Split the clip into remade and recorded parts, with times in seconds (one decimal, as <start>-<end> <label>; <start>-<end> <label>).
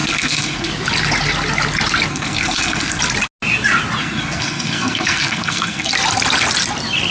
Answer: 0.0-0.7 remade; 0.7-2.1 recorded; 2.1-3.0 remade; 3.0-4.0 recorded; 4.0-5.9 remade; 5.9-7.1 recorded